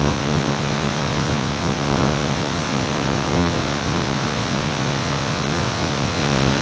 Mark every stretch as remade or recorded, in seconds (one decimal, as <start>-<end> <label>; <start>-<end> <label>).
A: 0.0-6.6 remade